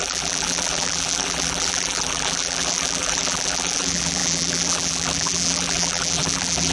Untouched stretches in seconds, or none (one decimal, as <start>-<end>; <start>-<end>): none